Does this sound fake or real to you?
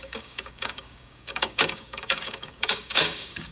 fake